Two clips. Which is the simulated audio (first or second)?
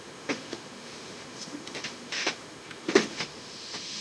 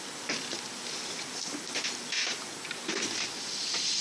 first